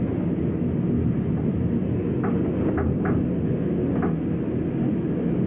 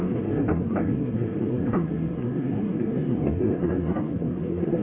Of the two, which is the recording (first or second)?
first